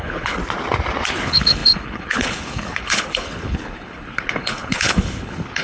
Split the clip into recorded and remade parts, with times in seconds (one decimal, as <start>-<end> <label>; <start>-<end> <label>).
0.0-0.4 remade; 0.4-1.2 recorded; 1.2-5.6 remade